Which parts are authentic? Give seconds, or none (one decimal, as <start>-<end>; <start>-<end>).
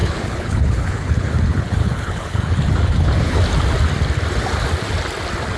3.4-5.6